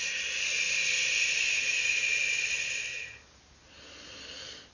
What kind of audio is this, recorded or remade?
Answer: recorded